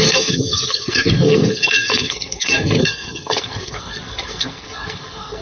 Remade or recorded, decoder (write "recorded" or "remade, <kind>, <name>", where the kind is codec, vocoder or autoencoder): remade, codec, SNAC